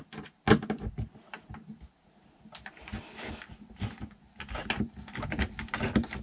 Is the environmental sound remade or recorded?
recorded